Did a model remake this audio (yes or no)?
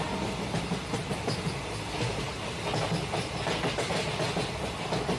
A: no